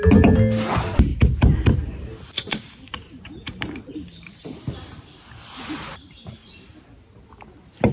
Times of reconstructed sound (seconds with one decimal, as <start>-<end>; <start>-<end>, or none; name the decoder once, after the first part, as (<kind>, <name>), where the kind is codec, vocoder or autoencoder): 1.1-2.6 (vocoder, BigVGAN v2)